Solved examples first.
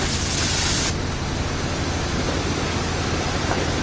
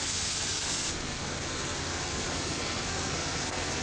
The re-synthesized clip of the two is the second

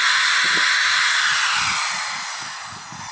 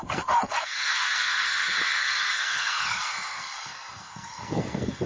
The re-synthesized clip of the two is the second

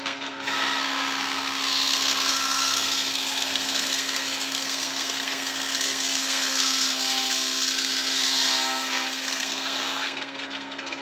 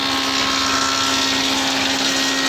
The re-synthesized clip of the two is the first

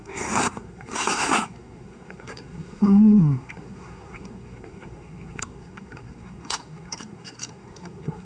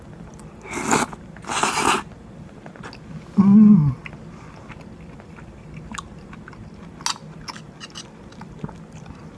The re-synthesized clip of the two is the first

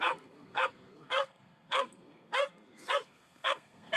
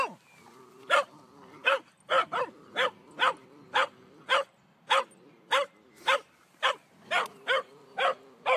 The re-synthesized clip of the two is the first